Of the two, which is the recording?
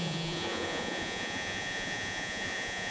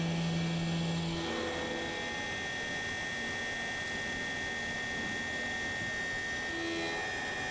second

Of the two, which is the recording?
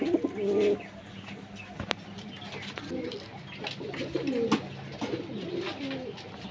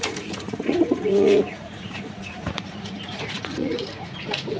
first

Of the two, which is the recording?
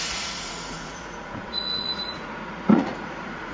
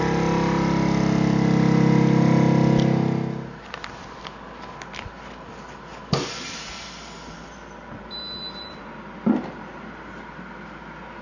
second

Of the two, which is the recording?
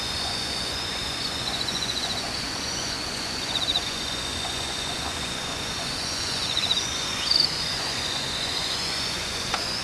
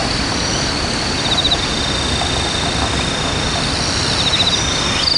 second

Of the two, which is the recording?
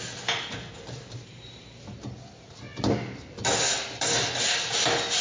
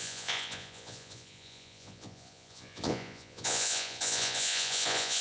first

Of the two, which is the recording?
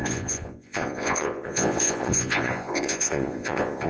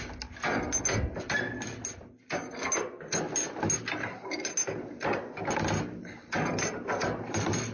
second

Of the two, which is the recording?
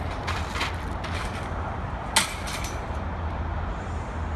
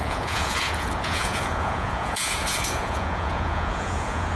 first